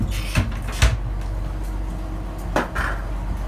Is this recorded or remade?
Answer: recorded